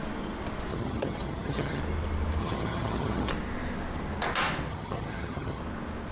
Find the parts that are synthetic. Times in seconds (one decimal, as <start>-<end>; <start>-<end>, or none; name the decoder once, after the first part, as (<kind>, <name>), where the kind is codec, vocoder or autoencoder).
0.7-1.8 (vocoder, HiFi-GAN); 2.4-3.3; 4.7-5.6